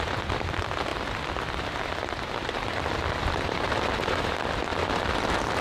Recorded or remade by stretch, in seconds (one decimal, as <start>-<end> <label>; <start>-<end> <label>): 0.0-0.9 recorded; 0.9-4.3 remade; 4.3-4.7 recorded; 4.7-5.6 remade